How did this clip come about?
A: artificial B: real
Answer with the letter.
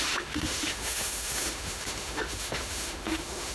A